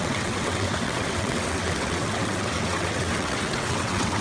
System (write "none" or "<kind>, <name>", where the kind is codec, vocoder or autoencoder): vocoder, WaveNeXt